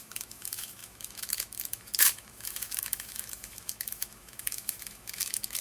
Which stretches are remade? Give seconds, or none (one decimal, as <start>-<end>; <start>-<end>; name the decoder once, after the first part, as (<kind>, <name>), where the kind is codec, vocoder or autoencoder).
0.0-5.6 (autoencoder, DAC-VAE)